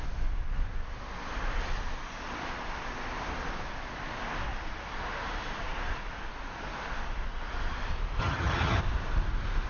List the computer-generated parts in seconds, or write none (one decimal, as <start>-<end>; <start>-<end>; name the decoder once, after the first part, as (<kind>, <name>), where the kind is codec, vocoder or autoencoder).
8.2-8.8 (vocoder, HiFi-GAN)